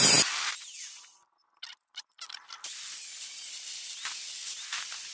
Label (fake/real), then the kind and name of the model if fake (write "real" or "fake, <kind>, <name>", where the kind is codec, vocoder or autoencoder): real